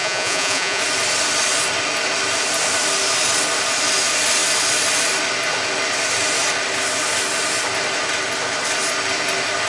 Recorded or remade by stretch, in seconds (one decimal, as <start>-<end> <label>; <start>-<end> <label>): 0.0-0.8 remade; 0.8-9.7 recorded